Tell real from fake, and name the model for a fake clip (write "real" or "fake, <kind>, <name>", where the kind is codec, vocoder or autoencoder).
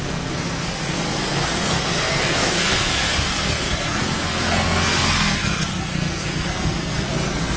fake, codec, SNAC